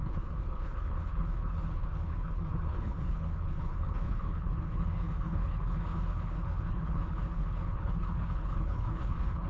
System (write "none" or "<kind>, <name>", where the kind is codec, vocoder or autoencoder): codec, HILCodec